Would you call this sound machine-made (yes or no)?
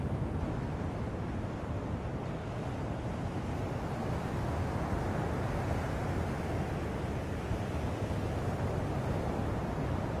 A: no